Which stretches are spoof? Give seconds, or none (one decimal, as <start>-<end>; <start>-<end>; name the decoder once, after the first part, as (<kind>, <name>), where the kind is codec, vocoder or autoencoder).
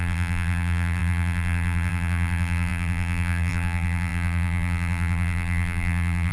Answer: 0.0-6.3 (vocoder, BigVGAN v2)